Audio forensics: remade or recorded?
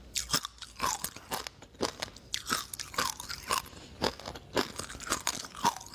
recorded